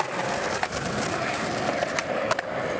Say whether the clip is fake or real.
real